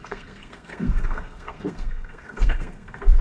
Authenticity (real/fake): fake